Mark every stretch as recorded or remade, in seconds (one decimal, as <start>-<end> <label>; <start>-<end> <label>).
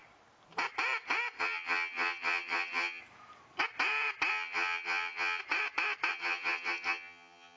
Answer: 0.0-1.4 recorded; 1.4-3.0 remade; 3.0-4.3 recorded; 4.3-5.4 remade; 5.4-6.1 recorded; 6.1-7.6 remade